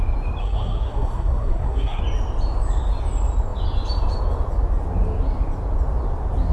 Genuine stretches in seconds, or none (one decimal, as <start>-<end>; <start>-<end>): 0.0-0.4; 2.0-6.5